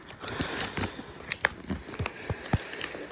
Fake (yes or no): no